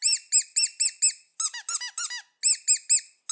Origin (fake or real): real